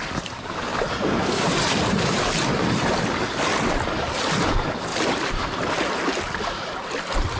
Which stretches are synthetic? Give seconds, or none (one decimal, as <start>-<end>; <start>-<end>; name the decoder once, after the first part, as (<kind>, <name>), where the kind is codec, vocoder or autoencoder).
0.0-3.2 (vocoder, BigVGAN v2); 4.5-4.9